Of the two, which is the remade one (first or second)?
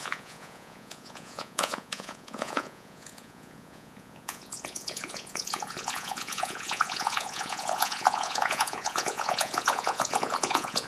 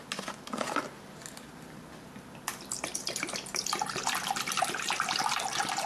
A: first